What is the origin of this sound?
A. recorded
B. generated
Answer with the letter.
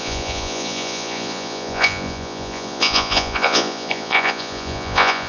B